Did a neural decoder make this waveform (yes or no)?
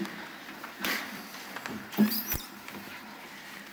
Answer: yes